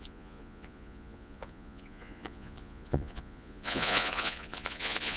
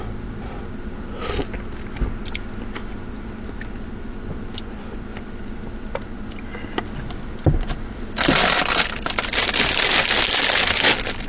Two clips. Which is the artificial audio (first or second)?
first